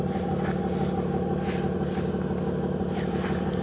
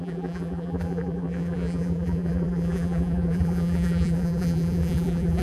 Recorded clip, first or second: first